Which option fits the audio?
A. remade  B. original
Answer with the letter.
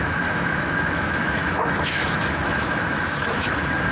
A